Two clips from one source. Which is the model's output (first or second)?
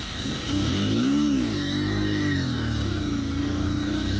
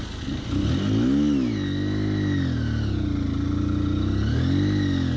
first